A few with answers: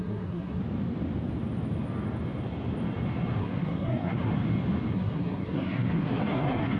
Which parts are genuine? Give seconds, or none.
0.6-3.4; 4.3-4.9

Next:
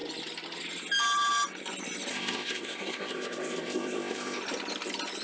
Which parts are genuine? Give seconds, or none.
0.0-2.1; 4.4-5.2

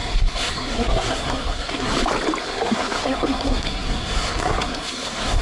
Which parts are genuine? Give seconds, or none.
1.9-2.4

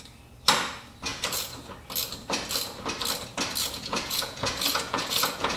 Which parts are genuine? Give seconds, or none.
0.0-1.1; 1.7-3.6

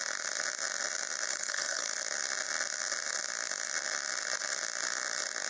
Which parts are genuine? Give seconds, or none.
0.0-1.3; 1.9-5.5

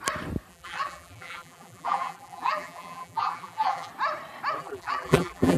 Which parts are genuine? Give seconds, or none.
0.0-0.5; 3.9-4.6